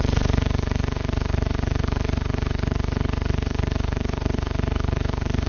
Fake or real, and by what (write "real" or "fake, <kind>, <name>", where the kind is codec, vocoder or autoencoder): fake, codec, HILCodec